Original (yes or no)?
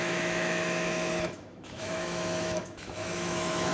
no